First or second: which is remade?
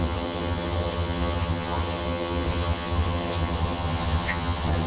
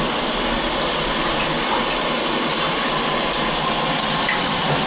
first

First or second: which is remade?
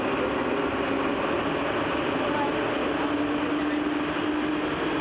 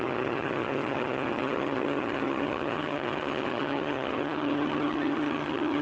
second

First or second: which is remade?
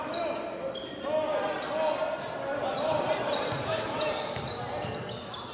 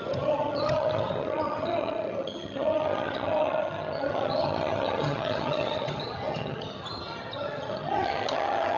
second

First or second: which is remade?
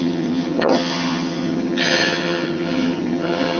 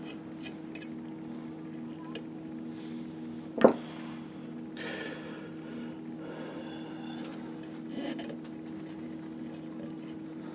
first